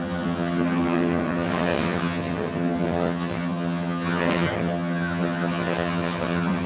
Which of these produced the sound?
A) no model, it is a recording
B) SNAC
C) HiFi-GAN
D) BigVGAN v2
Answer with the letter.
C